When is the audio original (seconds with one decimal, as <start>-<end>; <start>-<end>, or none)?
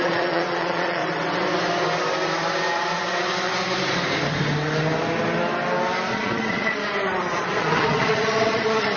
1.0-6.1; 6.8-7.4